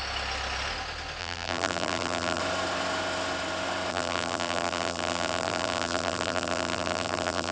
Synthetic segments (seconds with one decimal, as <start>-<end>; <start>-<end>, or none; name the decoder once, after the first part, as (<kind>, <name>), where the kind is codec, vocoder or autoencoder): 1.2-2.4 (vocoder, BigVGAN v2); 3.9-7.5

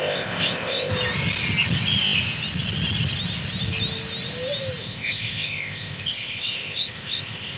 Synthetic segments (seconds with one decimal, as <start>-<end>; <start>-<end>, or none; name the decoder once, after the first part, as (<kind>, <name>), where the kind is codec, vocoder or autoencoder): 0.0-0.9 (codec, ZipCodec); 4.8-7.6

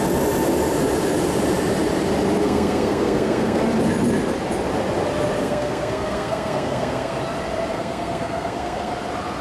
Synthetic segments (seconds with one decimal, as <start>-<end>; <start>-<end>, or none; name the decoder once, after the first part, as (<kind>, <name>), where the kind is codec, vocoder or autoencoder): 2.4-3.6 (codec, SNAC); 5.4-7.2; 7.7-8.9